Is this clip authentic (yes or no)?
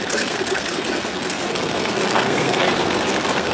no